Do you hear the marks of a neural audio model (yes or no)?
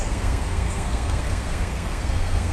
yes